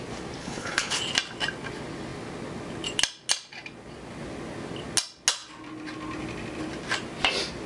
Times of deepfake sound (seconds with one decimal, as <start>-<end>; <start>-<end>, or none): 0.4-1.0